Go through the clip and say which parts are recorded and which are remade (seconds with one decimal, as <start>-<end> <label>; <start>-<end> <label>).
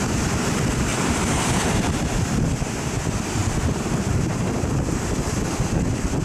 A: 0.0-0.9 recorded; 0.9-2.3 remade; 2.3-6.2 recorded